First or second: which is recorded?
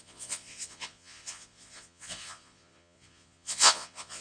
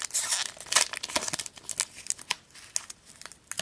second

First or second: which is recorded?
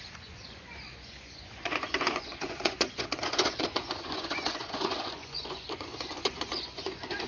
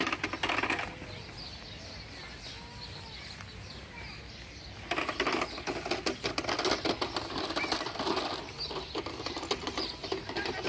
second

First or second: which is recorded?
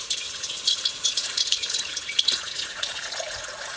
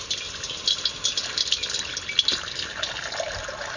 second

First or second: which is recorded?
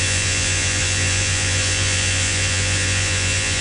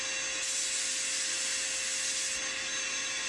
second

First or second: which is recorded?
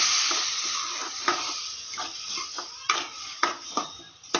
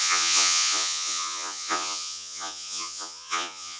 first